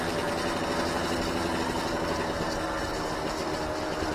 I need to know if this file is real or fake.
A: real